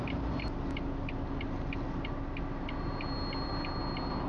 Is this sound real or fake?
real